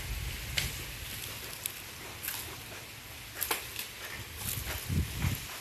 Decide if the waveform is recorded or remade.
recorded